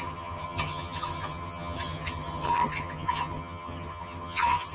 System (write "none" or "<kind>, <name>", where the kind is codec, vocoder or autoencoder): vocoder, HiFi-GAN